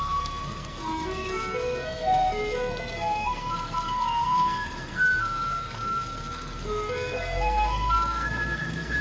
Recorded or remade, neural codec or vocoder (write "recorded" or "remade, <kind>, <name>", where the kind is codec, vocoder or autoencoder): remade, codec, SNAC